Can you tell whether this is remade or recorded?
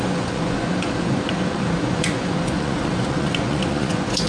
remade